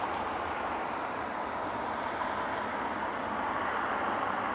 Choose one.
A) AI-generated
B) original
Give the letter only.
B